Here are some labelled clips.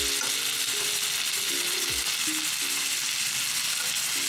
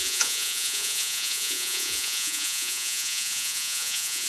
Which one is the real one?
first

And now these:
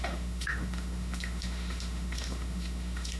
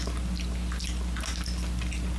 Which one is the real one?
second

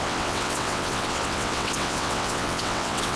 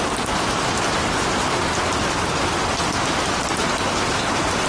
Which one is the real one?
second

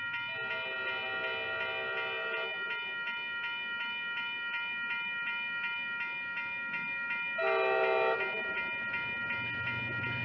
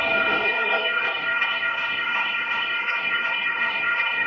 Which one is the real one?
first